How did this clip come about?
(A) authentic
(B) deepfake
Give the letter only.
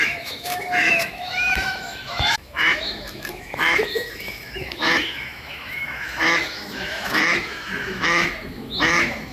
B